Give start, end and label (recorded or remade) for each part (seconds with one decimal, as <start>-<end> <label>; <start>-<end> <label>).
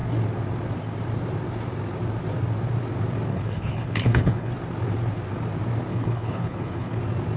0.0-3.3 recorded; 3.3-4.5 remade; 4.5-5.9 recorded; 5.9-7.0 remade; 7.0-7.4 recorded